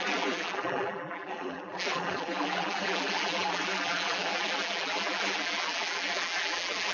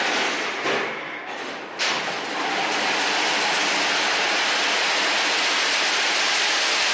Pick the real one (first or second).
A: second